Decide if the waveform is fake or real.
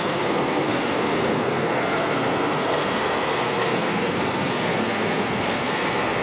fake